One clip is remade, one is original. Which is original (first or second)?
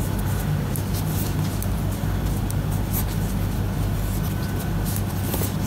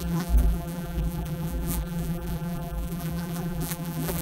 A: first